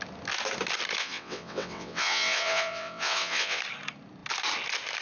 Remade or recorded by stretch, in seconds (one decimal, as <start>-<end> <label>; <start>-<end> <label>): 0.0-1.0 recorded; 1.0-3.6 remade; 3.6-5.0 recorded

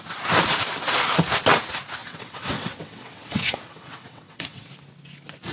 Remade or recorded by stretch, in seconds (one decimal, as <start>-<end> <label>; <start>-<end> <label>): 0.0-2.0 recorded; 2.0-4.7 remade; 4.7-5.5 recorded

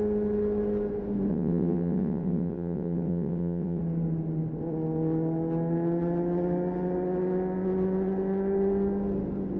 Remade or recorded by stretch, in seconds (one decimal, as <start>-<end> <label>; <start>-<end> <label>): 0.0-1.3 recorded; 1.3-3.8 remade; 3.8-9.6 recorded

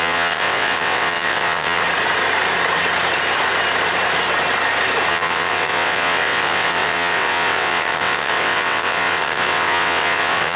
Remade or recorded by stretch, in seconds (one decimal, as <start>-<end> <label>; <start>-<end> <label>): 0.0-1.8 remade; 1.8-5.1 recorded; 5.1-10.6 remade

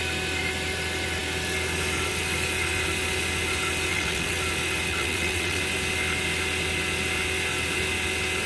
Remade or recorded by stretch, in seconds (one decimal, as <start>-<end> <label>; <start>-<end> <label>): 0.0-3.9 recorded; 3.9-4.4 remade; 4.4-4.9 recorded; 4.9-5.6 remade; 5.6-8.5 recorded

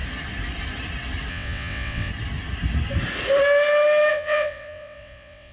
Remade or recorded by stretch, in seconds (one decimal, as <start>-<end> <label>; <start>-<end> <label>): 0.0-1.3 recorded; 1.3-2.1 remade; 2.1-4.1 recorded; 4.1-5.5 remade

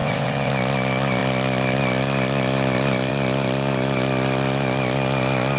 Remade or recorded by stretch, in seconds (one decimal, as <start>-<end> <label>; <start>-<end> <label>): 0.0-0.5 remade; 0.5-5.6 recorded

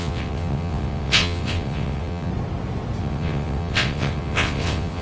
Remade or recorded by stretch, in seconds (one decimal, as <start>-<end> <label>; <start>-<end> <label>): 0.0-2.3 remade; 2.3-3.0 recorded; 3.0-5.0 remade